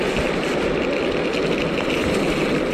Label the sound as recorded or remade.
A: recorded